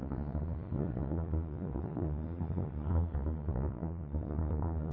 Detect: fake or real fake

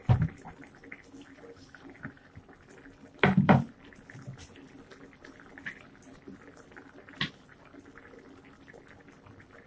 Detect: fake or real real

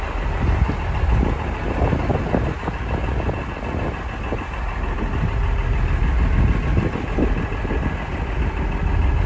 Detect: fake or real real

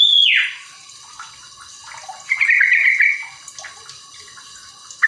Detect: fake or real real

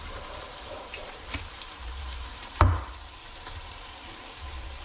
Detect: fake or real fake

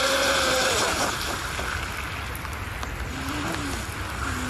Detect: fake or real real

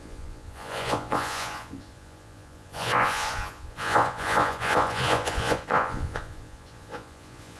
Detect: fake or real fake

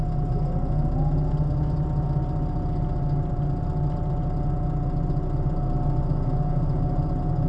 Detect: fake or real real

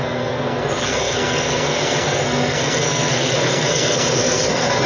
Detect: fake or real fake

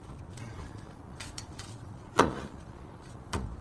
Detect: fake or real fake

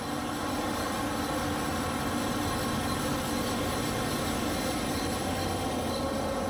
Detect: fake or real real